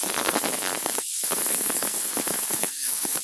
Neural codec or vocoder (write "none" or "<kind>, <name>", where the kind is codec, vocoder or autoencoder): codec, SNAC